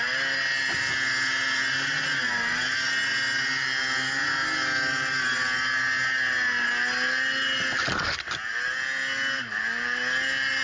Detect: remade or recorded recorded